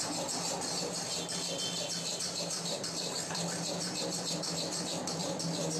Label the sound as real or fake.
real